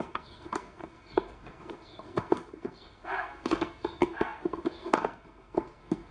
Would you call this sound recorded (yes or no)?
no